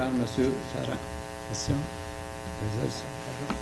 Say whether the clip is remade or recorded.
recorded